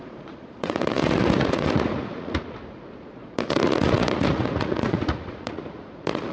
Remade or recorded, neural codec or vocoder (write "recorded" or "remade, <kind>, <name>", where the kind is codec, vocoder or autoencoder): remade, vocoder, Vocos